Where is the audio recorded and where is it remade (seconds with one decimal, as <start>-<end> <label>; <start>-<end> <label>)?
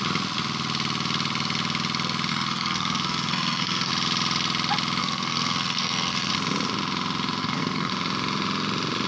0.0-2.3 recorded; 2.3-3.9 remade; 3.9-5.0 recorded; 5.0-6.3 remade; 6.3-7.4 recorded; 7.4-7.9 remade; 7.9-9.1 recorded